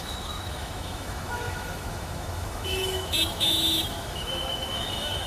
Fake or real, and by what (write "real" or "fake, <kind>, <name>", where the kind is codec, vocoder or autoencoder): fake, autoencoder, DAC-VAE